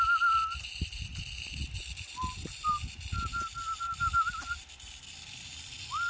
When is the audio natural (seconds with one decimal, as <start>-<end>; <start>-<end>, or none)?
0.0-6.1